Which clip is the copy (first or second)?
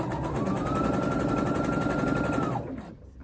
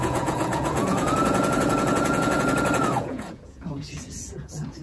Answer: second